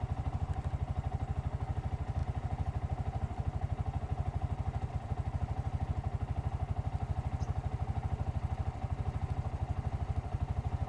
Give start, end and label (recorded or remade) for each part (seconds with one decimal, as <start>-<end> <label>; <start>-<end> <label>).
0.0-10.9 recorded